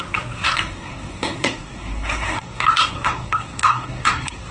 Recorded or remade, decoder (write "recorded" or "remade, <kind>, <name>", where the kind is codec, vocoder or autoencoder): remade, codec, SNAC